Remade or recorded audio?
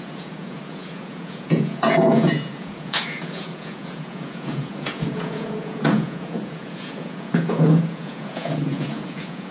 remade